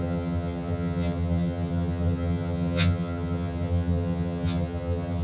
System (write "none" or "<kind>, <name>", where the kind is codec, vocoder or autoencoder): vocoder, HiFi-GAN